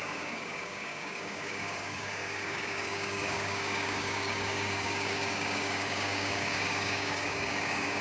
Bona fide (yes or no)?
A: no